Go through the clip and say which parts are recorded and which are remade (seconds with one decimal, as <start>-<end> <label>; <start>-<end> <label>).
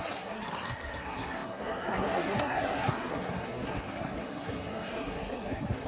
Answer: 0.0-5.9 remade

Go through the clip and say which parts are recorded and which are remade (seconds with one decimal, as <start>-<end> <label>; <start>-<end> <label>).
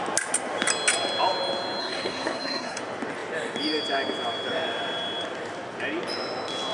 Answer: 0.0-1.8 recorded; 1.8-2.8 remade; 2.8-6.7 recorded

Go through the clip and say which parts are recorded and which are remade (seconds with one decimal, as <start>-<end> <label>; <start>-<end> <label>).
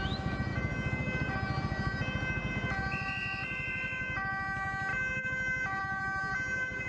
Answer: 0.0-6.9 recorded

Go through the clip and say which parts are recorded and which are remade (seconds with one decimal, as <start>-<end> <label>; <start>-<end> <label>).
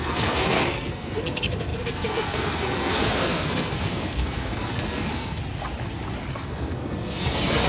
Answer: 0.0-5.4 remade; 5.4-6.3 recorded; 6.3-7.7 remade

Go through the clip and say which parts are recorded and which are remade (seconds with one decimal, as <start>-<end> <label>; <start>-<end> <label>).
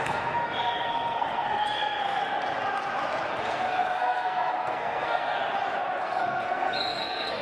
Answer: 0.0-2.2 remade; 2.2-3.4 recorded; 3.4-5.4 remade; 5.4-6.0 recorded; 6.0-7.4 remade